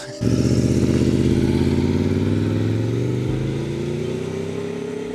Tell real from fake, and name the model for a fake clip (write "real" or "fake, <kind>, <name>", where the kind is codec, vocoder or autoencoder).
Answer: real